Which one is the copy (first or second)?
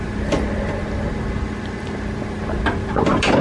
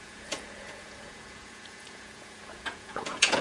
second